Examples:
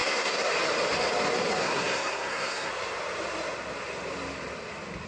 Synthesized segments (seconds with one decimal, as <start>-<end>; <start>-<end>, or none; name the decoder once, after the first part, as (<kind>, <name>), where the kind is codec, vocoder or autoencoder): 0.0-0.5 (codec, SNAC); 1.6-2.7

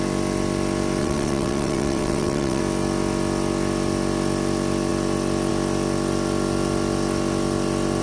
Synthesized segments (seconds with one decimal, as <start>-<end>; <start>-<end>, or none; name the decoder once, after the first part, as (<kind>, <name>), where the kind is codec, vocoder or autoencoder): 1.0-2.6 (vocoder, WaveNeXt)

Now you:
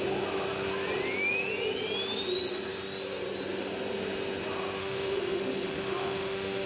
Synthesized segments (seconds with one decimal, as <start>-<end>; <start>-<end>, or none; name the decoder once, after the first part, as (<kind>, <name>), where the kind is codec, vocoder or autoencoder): 4.8-6.7 (autoencoder, DAC-VAE)